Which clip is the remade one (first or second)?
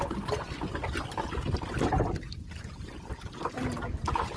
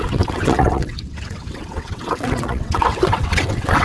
second